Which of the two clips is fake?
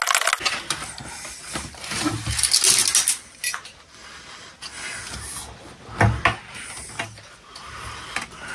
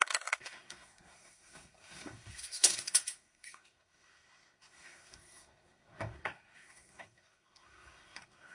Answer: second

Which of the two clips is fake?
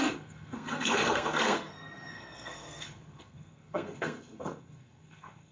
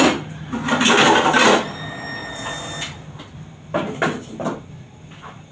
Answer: first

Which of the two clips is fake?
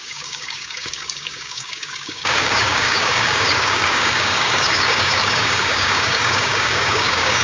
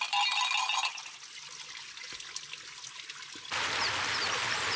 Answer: first